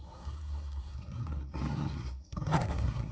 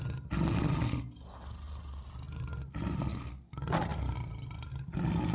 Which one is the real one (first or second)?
second